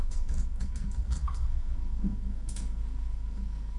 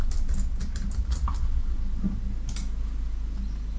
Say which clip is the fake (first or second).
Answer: first